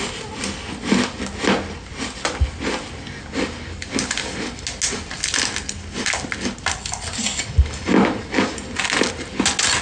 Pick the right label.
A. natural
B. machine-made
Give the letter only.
A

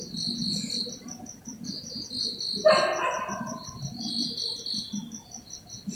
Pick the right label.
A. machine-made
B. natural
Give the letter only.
B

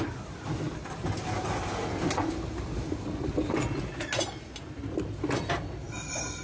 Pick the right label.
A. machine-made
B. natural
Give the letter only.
B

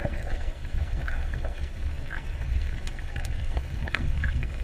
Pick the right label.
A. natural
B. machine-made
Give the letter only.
B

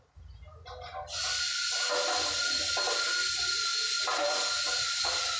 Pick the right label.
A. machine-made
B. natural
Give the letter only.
B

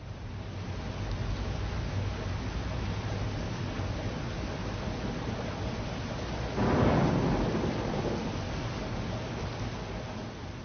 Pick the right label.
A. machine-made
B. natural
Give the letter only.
B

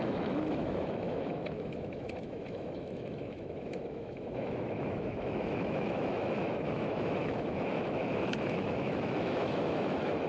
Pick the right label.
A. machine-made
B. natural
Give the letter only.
A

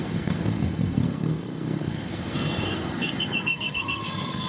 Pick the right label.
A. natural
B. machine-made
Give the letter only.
B